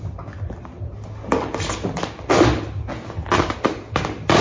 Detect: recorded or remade recorded